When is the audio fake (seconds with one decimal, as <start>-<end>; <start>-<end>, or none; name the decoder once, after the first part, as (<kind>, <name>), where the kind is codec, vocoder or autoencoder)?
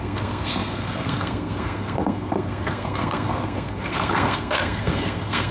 0.0-5.5 (codec, SNAC)